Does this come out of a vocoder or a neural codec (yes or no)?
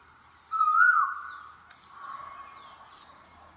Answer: no